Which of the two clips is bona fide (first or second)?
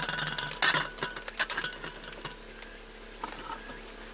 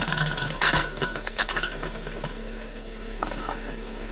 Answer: first